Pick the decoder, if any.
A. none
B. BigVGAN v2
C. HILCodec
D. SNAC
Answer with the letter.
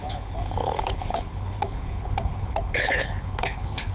C